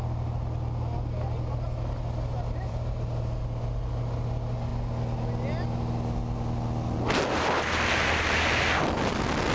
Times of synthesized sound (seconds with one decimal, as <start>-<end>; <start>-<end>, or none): none